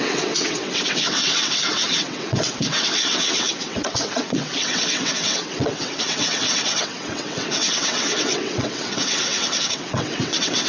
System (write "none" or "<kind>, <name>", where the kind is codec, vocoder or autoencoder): vocoder, WaveNeXt